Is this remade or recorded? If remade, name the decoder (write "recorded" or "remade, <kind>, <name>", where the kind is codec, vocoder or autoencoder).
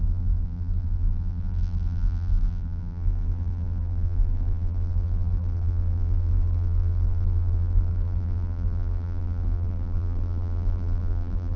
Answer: remade, vocoder, BigVGAN v2